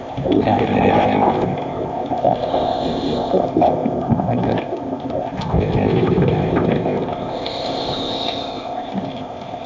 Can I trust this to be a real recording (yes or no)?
no